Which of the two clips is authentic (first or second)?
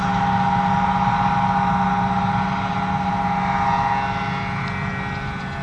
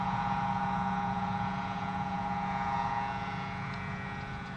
first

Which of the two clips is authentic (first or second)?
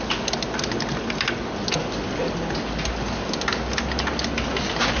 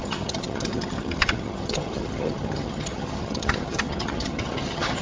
first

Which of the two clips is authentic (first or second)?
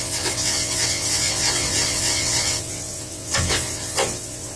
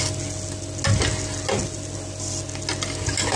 second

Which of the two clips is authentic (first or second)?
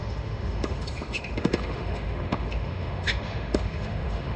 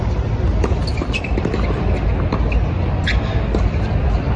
second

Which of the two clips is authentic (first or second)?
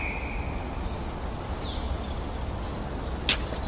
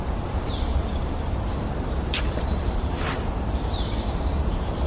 first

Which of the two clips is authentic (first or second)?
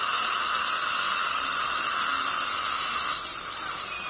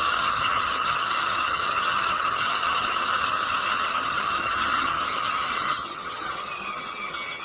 first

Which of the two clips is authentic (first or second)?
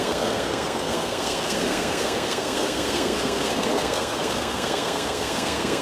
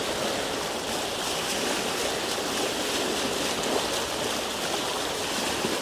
second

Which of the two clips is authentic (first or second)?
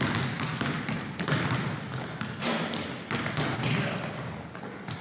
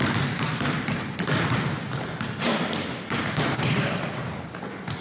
first